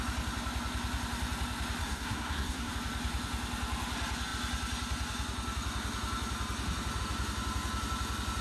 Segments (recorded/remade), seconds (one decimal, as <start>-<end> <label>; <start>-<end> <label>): 0.0-1.8 recorded; 1.8-2.7 remade; 2.7-8.4 recorded

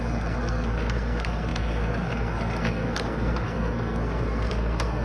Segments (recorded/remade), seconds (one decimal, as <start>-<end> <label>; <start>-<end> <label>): 0.0-5.0 remade